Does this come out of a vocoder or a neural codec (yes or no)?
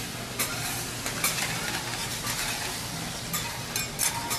no